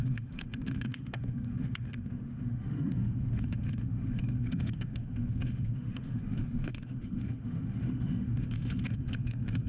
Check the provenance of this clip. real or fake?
fake